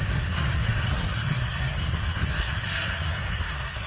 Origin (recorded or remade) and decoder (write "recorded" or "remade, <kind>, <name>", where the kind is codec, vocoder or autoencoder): remade, codec, SNAC